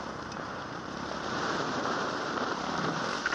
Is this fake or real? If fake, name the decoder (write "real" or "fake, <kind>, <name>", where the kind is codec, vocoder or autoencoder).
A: fake, vocoder, BigVGAN v2